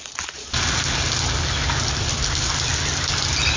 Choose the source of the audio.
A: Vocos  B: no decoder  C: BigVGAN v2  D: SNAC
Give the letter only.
B